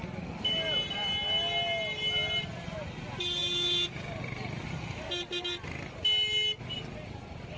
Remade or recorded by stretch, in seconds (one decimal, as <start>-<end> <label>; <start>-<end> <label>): 0.0-7.6 recorded